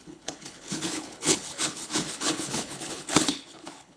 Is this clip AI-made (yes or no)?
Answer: yes